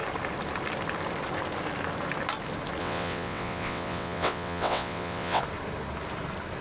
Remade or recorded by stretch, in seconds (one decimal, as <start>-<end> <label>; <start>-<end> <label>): 0.0-2.8 recorded; 2.8-5.4 remade; 5.4-6.6 recorded